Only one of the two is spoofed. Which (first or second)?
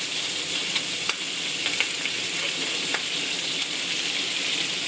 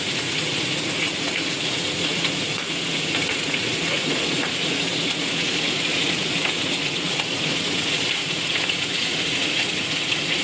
second